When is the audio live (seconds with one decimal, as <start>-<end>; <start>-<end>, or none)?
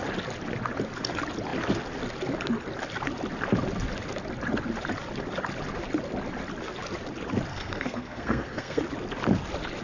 0.0-7.5; 8.8-9.8